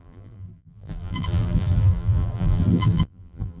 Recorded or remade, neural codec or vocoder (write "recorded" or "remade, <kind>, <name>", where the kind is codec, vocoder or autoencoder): remade, vocoder, BigVGAN v2